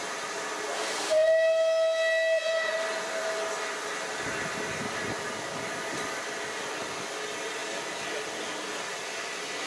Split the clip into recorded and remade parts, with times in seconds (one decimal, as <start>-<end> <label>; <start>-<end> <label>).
0.0-9.7 recorded

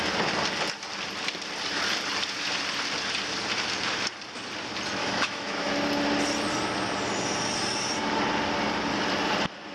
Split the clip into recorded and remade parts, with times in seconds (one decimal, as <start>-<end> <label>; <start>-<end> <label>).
0.0-5.0 recorded; 5.0-5.7 remade; 5.7-9.7 recorded